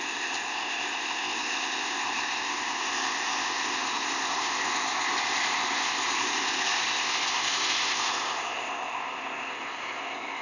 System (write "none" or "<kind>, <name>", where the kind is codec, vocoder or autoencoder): codec, ZipCodec